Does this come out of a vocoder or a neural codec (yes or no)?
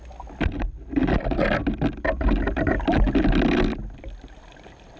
no